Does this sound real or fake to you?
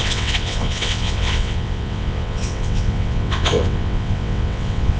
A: fake